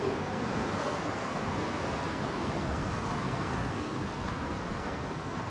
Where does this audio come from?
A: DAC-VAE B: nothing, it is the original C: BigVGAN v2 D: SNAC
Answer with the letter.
D